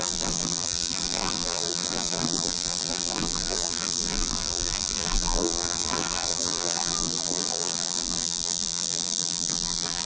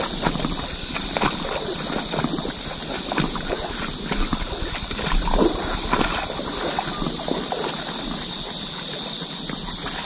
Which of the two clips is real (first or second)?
second